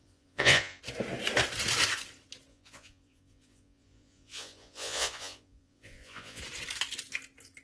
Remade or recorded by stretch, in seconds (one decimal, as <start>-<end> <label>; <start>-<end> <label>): 0.0-0.8 remade; 0.8-2.5 recorded; 2.5-6.4 remade; 6.4-7.6 recorded